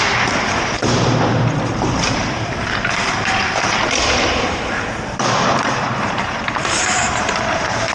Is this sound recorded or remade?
remade